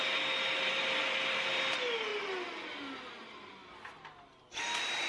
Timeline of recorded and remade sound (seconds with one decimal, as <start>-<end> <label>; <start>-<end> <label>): 0.0-2.1 remade; 2.1-3.1 recorded; 3.1-5.1 remade